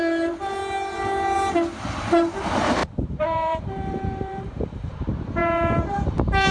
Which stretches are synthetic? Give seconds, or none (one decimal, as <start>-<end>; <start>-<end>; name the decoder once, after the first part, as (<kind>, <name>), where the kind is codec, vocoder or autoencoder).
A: 0.0-0.6 (vocoder, BigVGAN v2); 2.1-6.5